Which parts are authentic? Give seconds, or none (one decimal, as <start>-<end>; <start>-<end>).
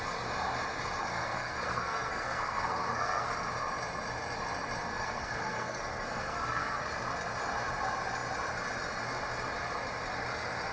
0.0-1.0; 3.3-4.9; 6.8-10.7